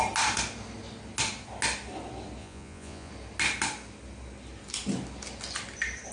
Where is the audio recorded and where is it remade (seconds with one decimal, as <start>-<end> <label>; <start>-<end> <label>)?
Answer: 0.0-2.4 recorded; 2.4-3.1 remade; 3.1-6.1 recorded